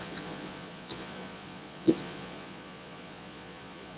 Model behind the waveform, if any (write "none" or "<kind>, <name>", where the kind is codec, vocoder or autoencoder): vocoder, Vocos